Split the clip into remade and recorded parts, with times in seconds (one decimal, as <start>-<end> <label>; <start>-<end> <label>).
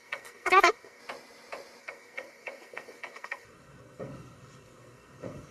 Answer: 0.0-1.0 remade; 1.0-1.8 recorded; 1.8-5.5 remade